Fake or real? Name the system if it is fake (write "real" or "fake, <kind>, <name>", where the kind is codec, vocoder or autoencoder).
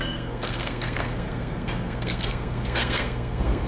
fake, codec, SNAC